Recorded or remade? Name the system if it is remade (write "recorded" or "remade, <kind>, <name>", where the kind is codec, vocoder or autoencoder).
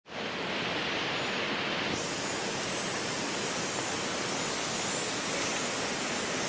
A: recorded